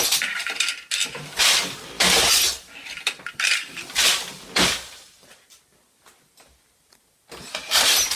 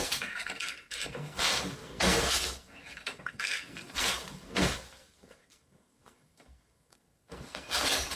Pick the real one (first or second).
first